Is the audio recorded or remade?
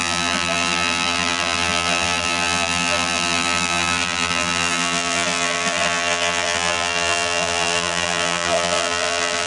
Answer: remade